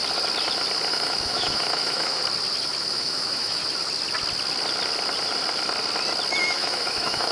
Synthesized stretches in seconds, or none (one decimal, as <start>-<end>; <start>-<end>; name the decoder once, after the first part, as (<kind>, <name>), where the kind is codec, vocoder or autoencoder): 0.9-2.2 (autoencoder, DAC-VAE); 2.8-3.6; 6.4-7.3